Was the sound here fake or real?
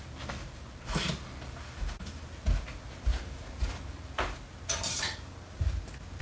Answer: real